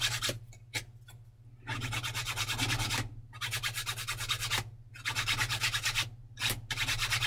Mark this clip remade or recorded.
recorded